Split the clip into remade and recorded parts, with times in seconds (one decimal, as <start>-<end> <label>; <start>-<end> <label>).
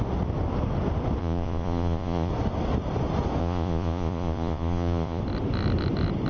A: 0.0-1.2 recorded; 1.2-2.3 remade; 2.3-3.4 recorded; 3.4-5.2 remade; 5.2-6.3 recorded